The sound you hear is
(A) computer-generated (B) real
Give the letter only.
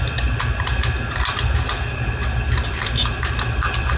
B